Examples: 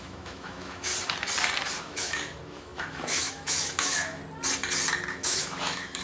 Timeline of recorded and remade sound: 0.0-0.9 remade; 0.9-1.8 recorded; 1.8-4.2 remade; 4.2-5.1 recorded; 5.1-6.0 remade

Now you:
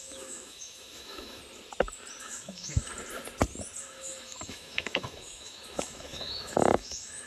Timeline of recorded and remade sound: 0.0-1.4 remade; 1.4-2.2 recorded; 2.2-2.9 remade; 2.9-3.8 recorded; 3.8-7.3 remade